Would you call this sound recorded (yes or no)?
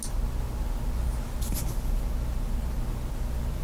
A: yes